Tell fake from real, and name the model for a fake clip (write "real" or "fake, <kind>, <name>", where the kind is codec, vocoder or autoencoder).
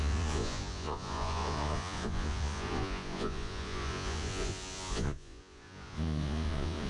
fake, vocoder, Vocos